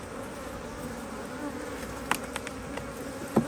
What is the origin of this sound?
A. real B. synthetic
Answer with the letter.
A